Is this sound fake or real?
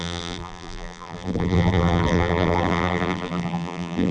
fake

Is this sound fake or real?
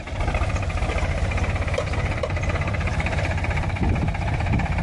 fake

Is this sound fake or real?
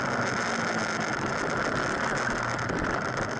real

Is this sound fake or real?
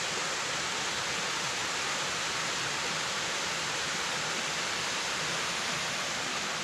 real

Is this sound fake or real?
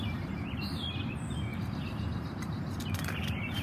fake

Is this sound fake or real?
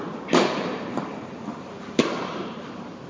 fake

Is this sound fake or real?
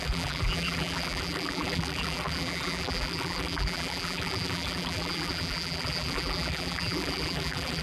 fake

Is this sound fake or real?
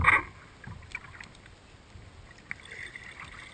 real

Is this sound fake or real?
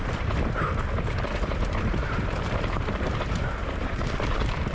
fake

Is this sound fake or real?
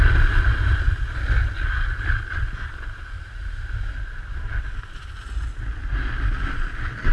real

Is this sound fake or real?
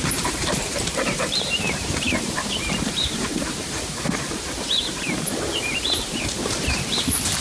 fake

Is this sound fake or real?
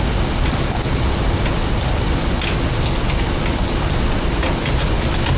real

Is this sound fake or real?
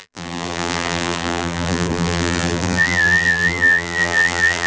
fake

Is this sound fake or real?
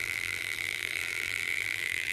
fake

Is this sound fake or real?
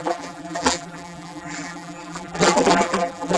fake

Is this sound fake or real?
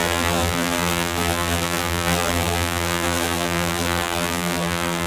fake